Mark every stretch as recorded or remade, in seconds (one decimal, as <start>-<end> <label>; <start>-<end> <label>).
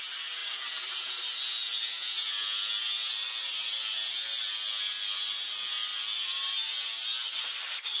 0.0-8.0 recorded